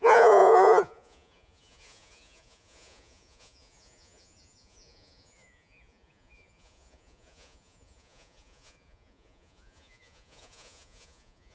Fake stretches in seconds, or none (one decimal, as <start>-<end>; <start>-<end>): 0.0-11.5